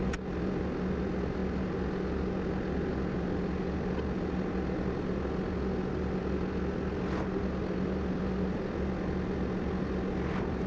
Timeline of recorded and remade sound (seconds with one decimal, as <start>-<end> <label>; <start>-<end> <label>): 0.0-10.7 recorded